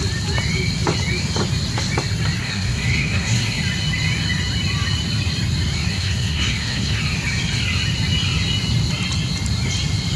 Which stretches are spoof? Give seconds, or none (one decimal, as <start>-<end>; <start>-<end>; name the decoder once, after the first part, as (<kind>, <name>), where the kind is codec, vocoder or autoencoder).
2.4-3.6 (codec, SNAC); 5.9-7.0